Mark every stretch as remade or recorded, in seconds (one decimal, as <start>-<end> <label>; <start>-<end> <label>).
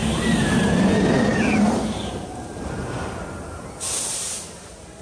0.0-5.0 recorded